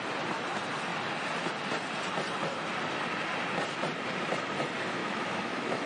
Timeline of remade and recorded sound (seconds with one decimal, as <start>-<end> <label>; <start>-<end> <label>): 0.0-5.0 recorded; 5.0-5.9 remade